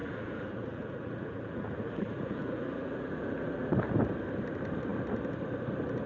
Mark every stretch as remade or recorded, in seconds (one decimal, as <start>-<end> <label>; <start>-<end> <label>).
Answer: 0.0-3.7 remade; 3.7-6.1 recorded